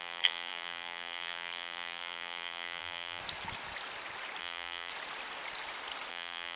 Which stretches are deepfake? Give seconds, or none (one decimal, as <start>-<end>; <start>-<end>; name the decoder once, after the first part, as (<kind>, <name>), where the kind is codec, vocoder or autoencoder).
0.0-3.2 (vocoder, BigVGAN v2); 4.4-4.9; 6.1-6.6